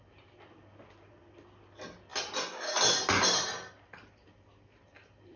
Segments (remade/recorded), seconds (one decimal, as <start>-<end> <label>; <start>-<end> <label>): 0.0-5.4 recorded